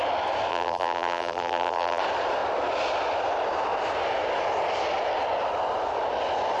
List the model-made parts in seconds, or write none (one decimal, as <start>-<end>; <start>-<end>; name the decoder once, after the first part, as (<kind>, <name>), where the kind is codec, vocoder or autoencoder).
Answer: 0.5-2.0 (vocoder, BigVGAN v2)